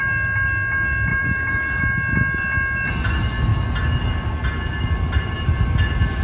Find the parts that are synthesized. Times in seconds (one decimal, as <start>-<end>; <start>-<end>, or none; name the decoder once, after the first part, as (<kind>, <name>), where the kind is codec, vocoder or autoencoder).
1.1-1.8 (vocoder, BigVGAN v2)